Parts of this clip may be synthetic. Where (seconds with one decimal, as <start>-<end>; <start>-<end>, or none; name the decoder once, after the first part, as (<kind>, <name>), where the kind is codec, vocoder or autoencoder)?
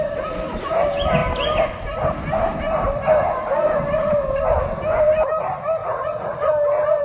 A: 5.8-6.5 (vocoder, Vocos)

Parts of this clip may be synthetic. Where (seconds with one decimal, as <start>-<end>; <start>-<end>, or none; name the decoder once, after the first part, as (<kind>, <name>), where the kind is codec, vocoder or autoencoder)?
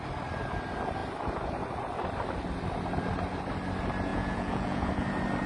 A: 4.1-4.9 (vocoder, Vocos)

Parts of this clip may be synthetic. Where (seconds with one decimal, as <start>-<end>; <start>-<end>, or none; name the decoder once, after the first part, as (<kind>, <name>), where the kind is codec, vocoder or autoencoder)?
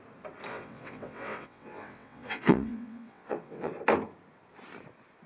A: 0.5-3.7 (vocoder, WaveNeXt)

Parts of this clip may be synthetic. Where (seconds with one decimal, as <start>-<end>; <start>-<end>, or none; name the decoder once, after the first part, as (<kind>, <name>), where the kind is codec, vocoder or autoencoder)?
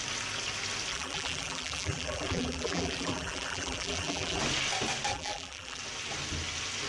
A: 0.9-4.4 (vocoder, BigVGAN v2); 5.1-5.8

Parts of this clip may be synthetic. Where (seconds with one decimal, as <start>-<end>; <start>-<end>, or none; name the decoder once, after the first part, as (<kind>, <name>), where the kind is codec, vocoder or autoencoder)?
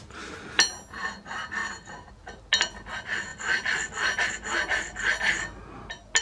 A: 1.6-2.1 (vocoder, BigVGAN v2)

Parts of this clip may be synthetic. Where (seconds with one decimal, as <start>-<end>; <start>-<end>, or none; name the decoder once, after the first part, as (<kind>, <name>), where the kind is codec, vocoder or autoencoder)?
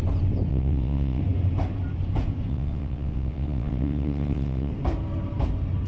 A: 0.5-1.2 (vocoder, WaveNeXt); 2.5-4.7